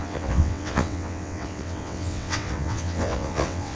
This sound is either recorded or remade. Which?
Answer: remade